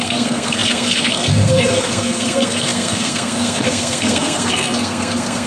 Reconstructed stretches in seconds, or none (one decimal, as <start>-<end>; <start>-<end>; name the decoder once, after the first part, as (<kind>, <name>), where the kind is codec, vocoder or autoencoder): 0.0-5.5 (codec, SNAC)